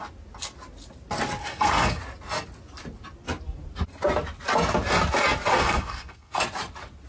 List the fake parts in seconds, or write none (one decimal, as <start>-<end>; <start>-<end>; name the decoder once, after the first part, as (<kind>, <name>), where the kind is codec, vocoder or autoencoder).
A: 1.4-2.0 (codec, SNAC); 5.5-6.4